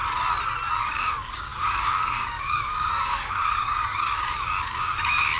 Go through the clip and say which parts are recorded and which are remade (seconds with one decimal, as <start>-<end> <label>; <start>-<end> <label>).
0.0-0.8 recorded; 0.8-5.4 remade